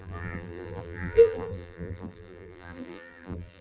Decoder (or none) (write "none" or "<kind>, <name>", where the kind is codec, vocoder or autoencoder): vocoder, BigVGAN v2